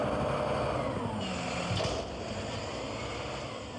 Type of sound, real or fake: real